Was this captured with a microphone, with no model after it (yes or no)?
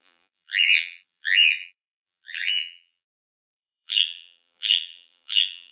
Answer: no